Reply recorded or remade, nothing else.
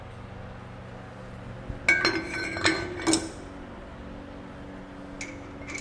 recorded